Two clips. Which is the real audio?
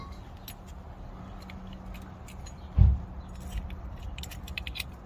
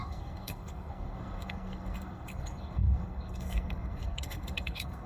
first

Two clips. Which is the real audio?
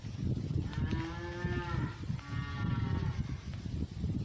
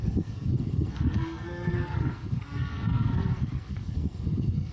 first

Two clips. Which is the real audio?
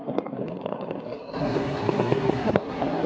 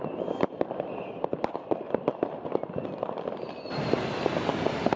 second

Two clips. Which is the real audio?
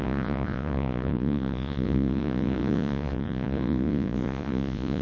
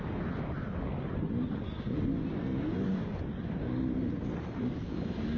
second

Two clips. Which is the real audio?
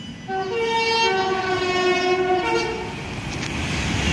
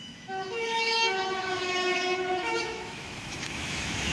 first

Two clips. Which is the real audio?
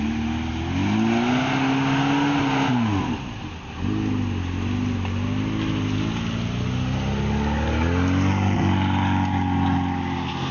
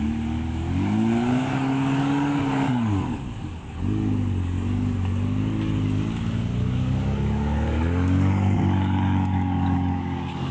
first